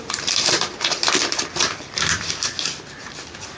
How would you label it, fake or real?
fake